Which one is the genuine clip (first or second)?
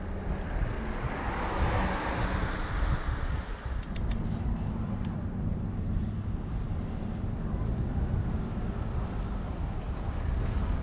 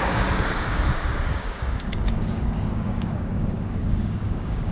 first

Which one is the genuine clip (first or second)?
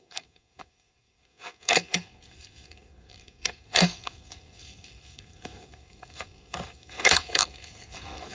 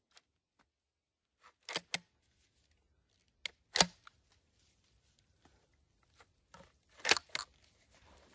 second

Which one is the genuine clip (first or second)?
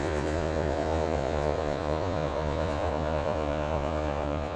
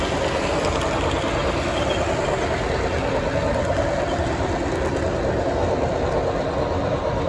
second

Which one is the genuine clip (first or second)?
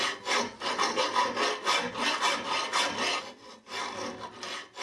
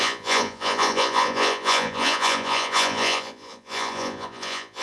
first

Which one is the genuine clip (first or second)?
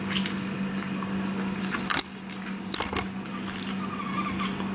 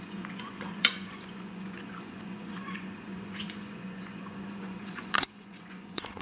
first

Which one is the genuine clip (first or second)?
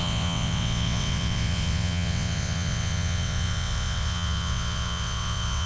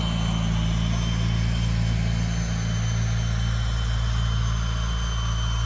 second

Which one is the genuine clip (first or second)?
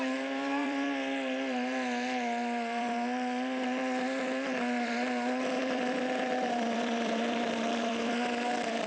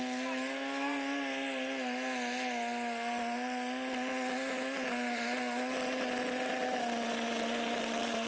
second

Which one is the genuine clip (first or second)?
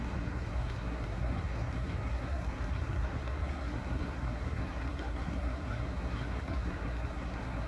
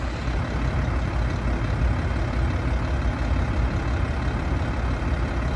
second